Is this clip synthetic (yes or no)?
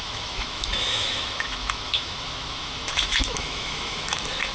yes